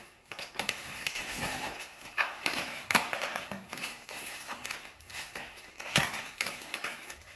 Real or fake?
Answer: fake